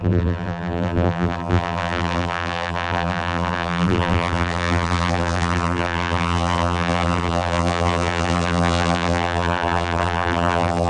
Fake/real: fake